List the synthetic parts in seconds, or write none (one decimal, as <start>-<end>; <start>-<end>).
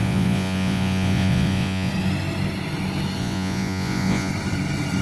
0.0-1.9; 3.2-4.3